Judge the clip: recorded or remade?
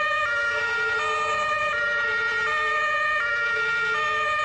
recorded